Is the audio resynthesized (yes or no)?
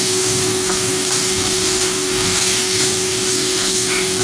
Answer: yes